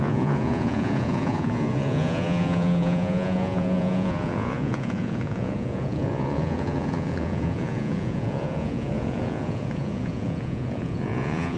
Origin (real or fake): fake